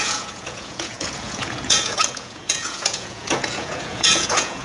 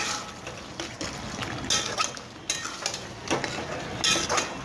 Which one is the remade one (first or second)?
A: first